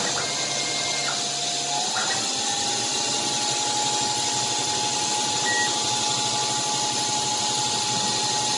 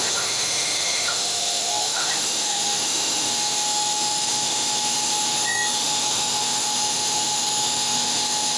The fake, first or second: second